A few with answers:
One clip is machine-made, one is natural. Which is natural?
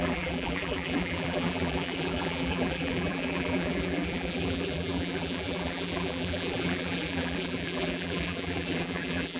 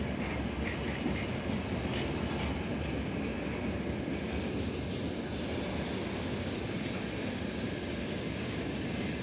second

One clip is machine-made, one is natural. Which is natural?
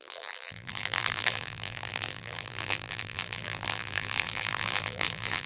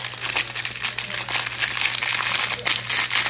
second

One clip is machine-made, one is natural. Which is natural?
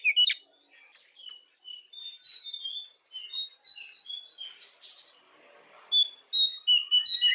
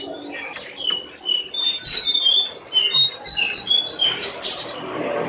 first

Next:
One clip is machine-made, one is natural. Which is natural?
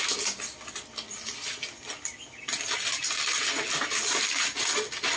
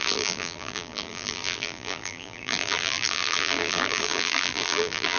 first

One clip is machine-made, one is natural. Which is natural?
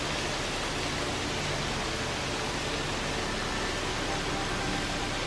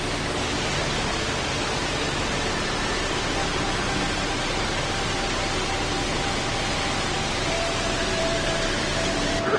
first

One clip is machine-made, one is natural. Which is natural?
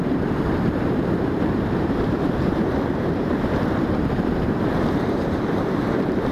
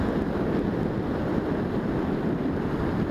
second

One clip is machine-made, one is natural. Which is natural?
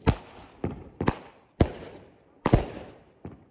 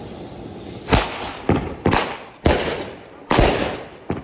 second